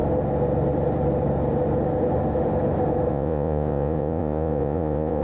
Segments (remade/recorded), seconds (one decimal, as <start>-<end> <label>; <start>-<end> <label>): 0.0-3.1 recorded; 3.1-5.2 remade